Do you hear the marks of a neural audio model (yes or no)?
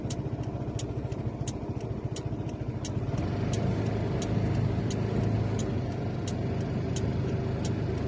no